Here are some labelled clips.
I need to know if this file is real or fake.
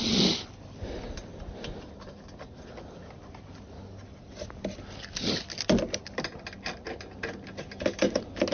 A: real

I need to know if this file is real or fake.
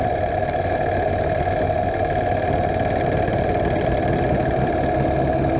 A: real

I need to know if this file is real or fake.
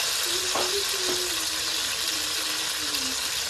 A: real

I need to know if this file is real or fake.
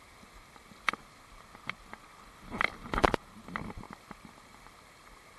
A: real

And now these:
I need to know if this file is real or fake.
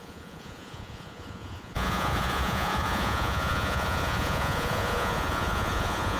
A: fake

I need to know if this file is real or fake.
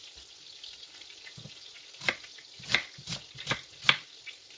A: real